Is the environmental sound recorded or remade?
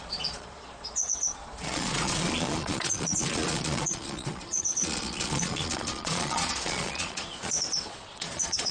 remade